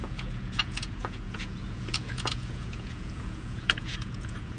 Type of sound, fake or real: fake